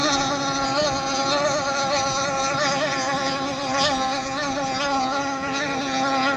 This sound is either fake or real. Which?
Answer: real